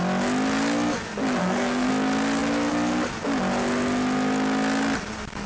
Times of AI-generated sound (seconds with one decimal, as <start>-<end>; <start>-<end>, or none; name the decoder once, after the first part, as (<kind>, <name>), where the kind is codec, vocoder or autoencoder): 1.4-1.9 (codec, SNAC)